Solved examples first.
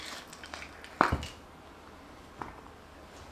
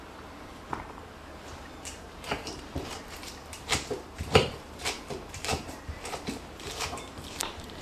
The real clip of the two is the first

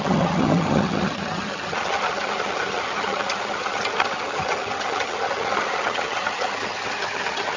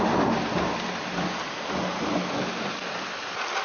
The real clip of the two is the second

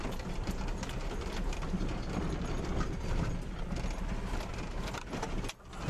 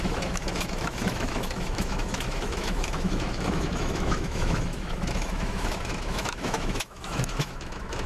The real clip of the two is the first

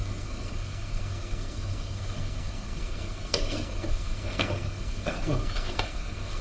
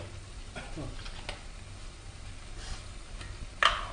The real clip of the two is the second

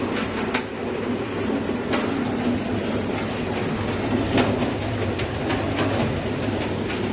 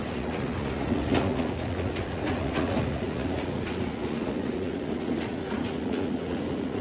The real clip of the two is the first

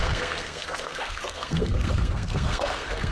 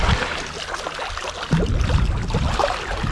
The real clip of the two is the second